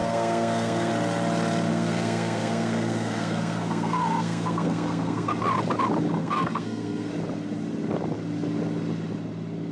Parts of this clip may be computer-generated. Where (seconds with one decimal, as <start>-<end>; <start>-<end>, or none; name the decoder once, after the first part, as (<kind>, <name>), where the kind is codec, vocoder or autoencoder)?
0.0-0.9 (codec, SNAC); 1.7-5.4; 6.2-7.1